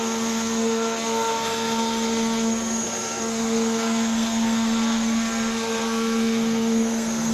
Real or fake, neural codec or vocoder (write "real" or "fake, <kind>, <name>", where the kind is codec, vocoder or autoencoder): fake, codec, SNAC